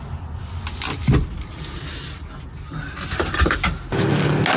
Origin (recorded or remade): recorded